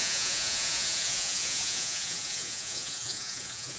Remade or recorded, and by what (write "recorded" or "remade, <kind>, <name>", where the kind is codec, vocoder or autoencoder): remade, vocoder, Vocos